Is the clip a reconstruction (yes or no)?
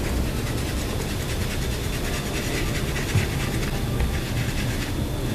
no